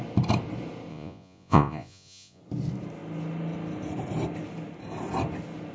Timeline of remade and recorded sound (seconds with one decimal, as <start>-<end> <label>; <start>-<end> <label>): 0.0-0.9 recorded; 0.9-2.4 remade; 2.4-5.7 recorded